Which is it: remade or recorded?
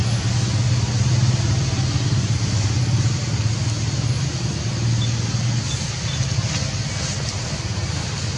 recorded